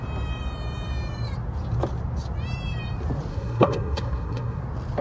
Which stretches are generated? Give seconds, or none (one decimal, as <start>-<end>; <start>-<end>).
3.3-4.6